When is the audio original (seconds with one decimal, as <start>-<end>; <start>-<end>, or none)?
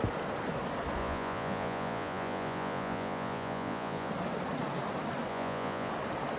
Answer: 0.0-1.0; 4.1-5.3; 5.9-6.4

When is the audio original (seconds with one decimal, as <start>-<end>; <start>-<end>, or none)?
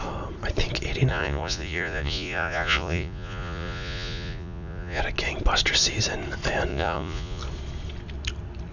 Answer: 0.0-1.1; 5.0-6.7; 7.4-8.7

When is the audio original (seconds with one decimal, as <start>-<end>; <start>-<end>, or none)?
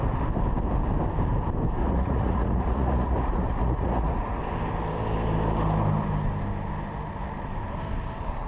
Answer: 0.0-1.8; 4.4-8.5